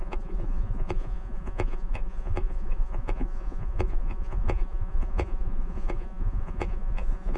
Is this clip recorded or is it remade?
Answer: remade